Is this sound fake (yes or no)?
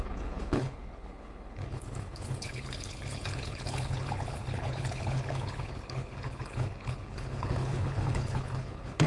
yes